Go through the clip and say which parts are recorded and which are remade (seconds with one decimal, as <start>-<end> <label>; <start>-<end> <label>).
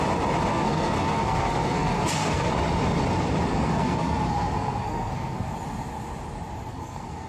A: 0.0-0.5 recorded; 0.5-2.5 remade; 2.5-3.5 recorded; 3.5-5.5 remade; 5.5-6.7 recorded; 6.7-7.3 remade